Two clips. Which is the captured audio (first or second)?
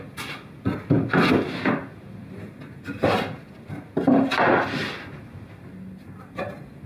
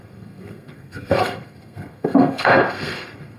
first